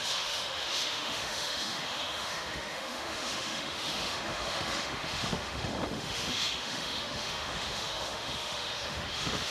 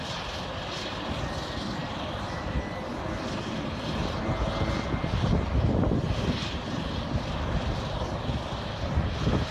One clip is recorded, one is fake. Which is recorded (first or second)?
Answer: second